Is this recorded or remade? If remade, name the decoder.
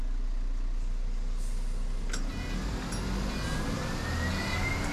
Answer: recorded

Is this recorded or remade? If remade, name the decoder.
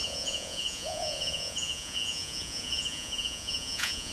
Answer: remade, vocoder, Vocos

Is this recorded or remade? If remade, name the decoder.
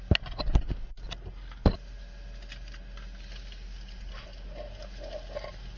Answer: recorded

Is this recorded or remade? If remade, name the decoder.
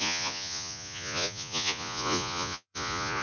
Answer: remade, vocoder, Vocos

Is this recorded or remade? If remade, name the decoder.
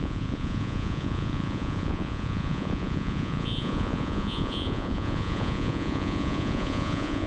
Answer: remade, vocoder, Vocos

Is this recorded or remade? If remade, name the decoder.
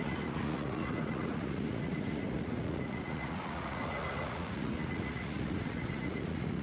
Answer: remade, vocoder, Vocos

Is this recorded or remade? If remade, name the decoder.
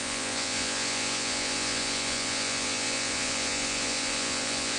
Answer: remade, vocoder, Vocos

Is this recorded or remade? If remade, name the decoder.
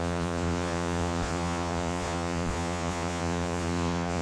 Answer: remade, vocoder, Vocos